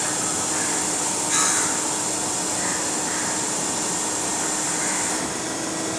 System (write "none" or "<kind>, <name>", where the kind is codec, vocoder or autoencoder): none